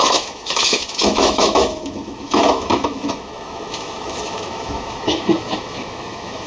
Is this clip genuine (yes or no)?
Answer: no